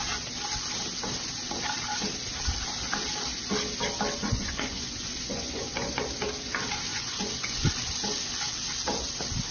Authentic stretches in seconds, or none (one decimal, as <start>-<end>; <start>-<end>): 0.0-4.2; 6.0-6.9; 7.7-9.5